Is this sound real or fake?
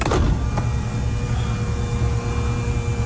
real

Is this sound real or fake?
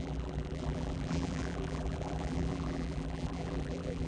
fake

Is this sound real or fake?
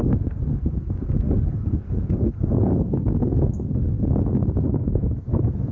fake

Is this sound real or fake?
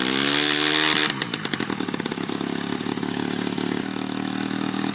real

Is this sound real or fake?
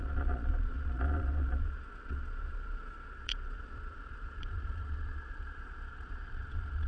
fake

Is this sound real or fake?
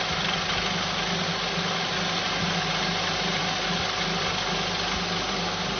real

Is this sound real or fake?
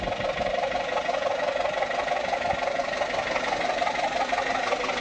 real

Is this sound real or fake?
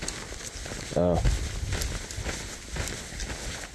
real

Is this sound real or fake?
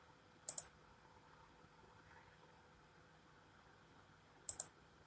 fake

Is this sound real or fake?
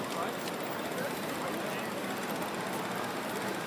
real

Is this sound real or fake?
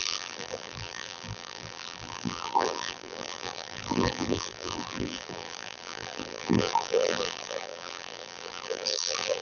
fake